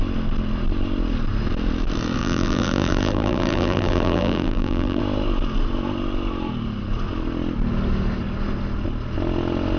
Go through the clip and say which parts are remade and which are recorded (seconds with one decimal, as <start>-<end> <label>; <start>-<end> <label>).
0.0-2.2 recorded; 2.2-5.0 remade; 5.0-9.8 recorded